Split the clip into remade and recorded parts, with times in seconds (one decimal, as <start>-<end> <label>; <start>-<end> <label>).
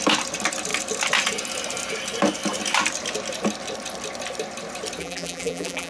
0.0-5.0 recorded; 5.0-5.9 remade